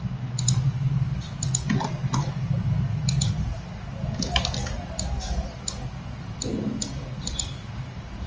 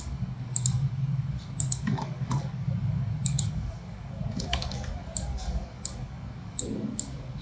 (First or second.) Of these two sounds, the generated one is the second